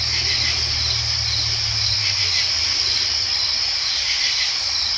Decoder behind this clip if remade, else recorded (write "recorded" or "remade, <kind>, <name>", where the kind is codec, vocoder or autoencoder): recorded